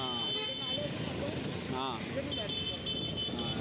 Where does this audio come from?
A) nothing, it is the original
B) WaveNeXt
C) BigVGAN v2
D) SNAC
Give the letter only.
A